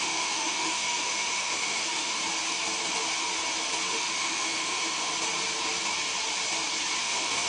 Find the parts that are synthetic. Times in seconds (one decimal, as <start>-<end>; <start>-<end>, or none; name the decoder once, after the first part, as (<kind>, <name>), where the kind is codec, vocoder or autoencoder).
0.0-2.2 (autoencoder, DAC-VAE); 3.9-5.1; 7.0-7.5